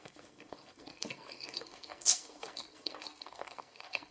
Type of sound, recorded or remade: remade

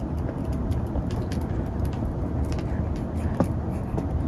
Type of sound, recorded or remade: recorded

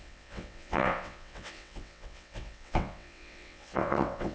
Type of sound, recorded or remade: remade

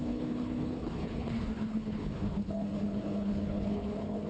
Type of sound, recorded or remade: remade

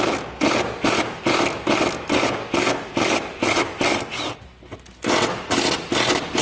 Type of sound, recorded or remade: recorded